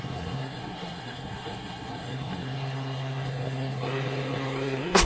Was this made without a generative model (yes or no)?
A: no